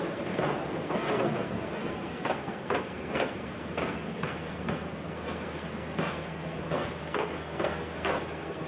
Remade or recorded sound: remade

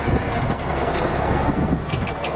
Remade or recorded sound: remade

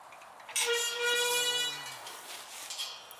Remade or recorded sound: recorded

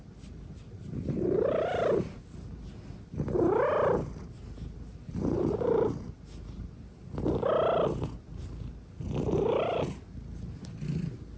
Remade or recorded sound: recorded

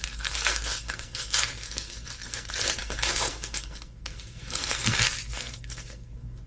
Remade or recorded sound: remade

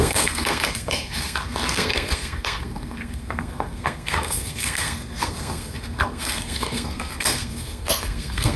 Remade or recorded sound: remade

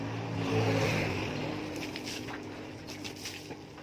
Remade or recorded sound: recorded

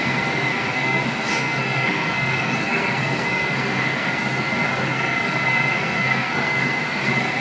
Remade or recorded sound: remade